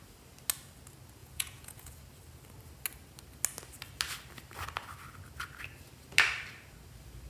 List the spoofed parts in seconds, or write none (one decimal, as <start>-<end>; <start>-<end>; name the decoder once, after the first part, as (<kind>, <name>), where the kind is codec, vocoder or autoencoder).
1.2-2.0 (vocoder, Vocos)